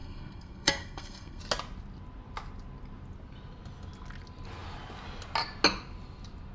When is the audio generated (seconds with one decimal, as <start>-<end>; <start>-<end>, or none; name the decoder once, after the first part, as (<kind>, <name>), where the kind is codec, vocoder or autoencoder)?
0.0-1.4 (codec, SNAC)